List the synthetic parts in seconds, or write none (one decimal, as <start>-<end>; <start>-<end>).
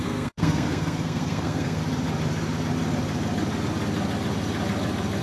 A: 0.0-1.8